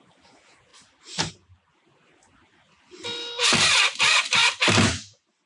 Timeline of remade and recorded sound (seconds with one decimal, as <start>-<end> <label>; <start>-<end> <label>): 0.0-5.5 recorded